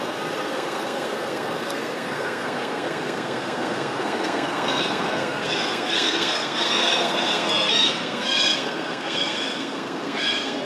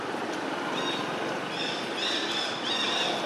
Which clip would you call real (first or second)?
second